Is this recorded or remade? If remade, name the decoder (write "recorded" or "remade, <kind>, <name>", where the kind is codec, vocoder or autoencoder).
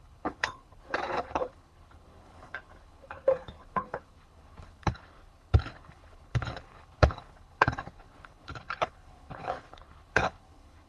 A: remade, codec, HILCodec